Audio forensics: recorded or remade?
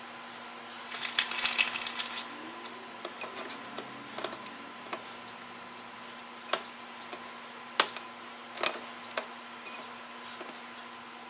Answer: recorded